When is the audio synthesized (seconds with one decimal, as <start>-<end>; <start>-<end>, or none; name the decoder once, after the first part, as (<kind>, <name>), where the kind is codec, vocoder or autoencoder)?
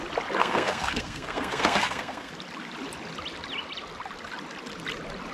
0.4-2.3 (codec, SNAC)